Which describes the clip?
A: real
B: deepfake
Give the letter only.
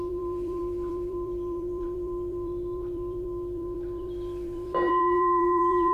B